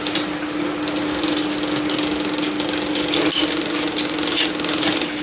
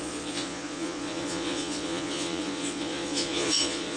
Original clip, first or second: first